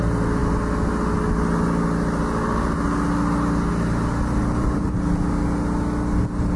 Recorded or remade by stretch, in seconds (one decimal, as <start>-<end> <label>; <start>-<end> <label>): 0.0-4.4 recorded; 4.4-4.9 remade; 4.9-6.6 recorded